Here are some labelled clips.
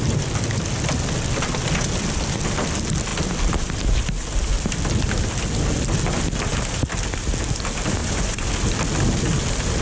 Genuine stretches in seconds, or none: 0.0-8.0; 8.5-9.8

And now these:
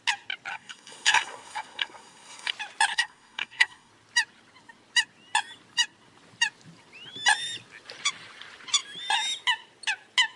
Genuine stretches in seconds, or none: 0.0-0.5; 2.5-2.9; 3.9-10.4

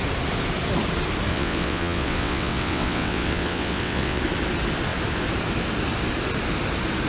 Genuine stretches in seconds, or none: 0.0-1.3; 4.2-7.1

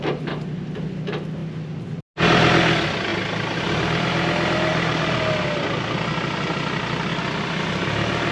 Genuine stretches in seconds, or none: 0.0-8.3

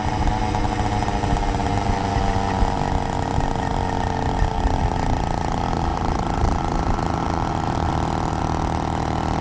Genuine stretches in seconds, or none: 0.0-1.7; 2.2-5.9; 7.9-9.4